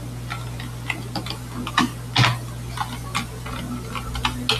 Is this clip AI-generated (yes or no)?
no